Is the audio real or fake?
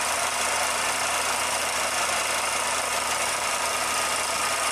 fake